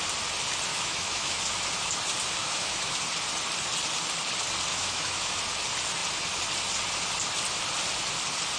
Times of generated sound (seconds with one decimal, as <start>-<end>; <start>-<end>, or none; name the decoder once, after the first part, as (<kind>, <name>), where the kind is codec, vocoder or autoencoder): 0.7-1.4 (autoencoder, DAC-VAE); 2.4-3.0; 4.7-5.4